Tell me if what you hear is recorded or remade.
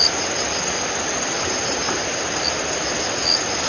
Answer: recorded